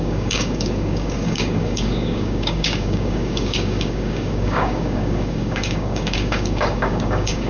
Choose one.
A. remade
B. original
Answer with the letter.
A